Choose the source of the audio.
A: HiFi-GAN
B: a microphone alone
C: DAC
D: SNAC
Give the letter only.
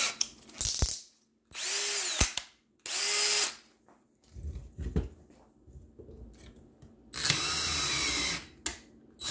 B